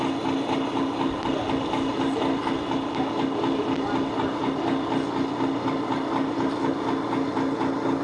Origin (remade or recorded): recorded